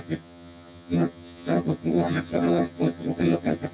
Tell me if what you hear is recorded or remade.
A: remade